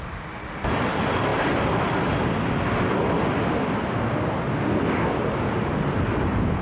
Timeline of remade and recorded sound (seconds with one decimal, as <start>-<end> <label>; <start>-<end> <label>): 0.0-6.6 recorded